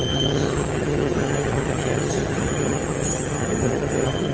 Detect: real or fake fake